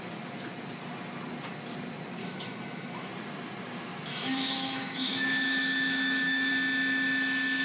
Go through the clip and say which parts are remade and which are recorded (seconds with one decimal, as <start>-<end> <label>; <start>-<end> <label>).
0.0-2.2 recorded; 2.2-3.1 remade; 3.1-4.1 recorded; 4.1-6.5 remade; 6.5-7.6 recorded